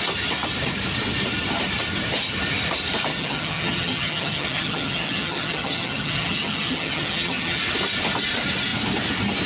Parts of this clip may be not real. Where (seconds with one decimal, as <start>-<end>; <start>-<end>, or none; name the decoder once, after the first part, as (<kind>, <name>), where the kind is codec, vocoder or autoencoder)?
3.1-7.6 (vocoder, HiFi-GAN)